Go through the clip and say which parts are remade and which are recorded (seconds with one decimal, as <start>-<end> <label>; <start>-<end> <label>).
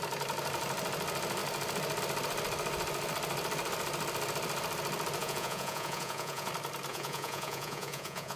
0.0-5.2 recorded; 5.2-6.5 remade; 6.5-6.9 recorded; 6.9-8.4 remade